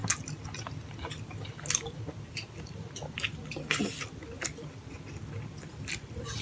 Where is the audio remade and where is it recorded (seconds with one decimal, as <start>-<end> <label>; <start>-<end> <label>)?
0.0-6.4 recorded